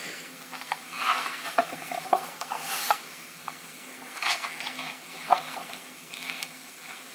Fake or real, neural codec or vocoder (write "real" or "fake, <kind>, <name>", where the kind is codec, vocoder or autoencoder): fake, codec, SNAC